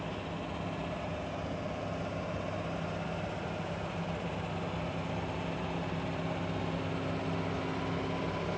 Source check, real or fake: real